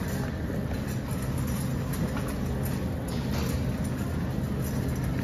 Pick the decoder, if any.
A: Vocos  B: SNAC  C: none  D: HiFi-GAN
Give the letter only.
C